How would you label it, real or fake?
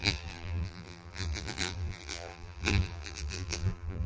fake